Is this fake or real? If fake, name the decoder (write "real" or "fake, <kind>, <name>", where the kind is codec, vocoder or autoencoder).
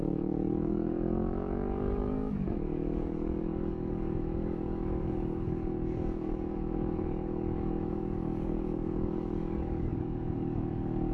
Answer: fake, codec, DAC